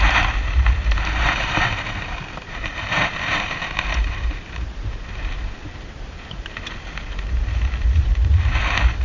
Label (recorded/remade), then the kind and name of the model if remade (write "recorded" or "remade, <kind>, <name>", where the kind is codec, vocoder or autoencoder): remade, vocoder, BigVGAN v2